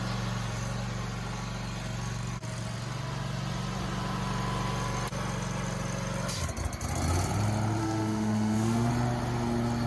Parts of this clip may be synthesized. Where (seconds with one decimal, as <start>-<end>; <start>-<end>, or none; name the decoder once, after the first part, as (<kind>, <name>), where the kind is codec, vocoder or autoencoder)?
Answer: 7.8-8.9 (autoencoder, DAC-VAE)